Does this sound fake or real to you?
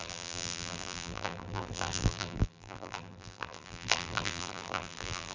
fake